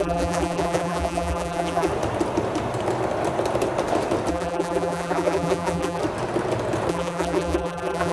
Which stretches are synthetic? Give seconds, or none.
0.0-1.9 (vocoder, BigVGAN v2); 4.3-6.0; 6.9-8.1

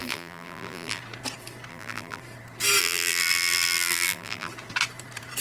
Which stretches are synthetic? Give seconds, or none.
0.0-1.0 (vocoder, BigVGAN v2); 1.7-2.2; 2.8-4.5

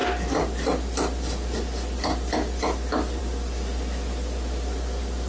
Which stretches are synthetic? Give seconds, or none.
none

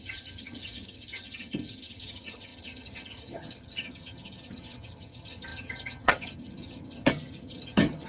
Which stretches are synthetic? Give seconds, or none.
0.0-8.1 (vocoder, HiFi-GAN)

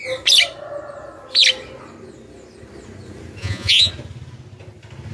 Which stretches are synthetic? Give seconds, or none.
3.4-3.9 (vocoder, Vocos)

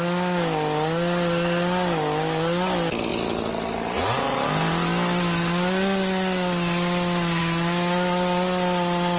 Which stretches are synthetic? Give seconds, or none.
none

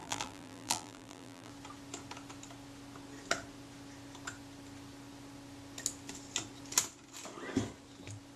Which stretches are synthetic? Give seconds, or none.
0.0-1.5 (vocoder, BigVGAN v2)

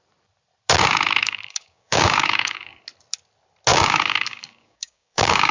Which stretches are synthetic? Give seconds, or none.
1.2-2.8 (codec, DAC); 3.7-5.5